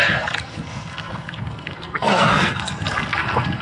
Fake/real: fake